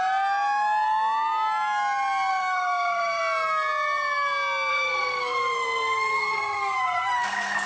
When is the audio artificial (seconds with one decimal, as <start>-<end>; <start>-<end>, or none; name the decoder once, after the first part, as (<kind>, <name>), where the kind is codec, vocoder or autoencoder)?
2.3-3.2 (codec, SNAC); 4.7-7.7